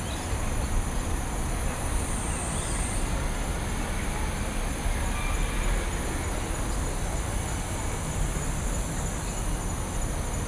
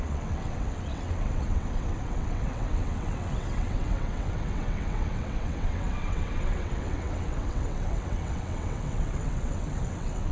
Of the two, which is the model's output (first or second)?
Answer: second